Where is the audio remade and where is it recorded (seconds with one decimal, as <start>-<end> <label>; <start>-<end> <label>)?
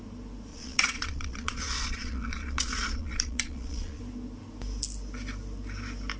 0.0-0.5 recorded; 0.5-4.0 remade; 4.0-6.2 recorded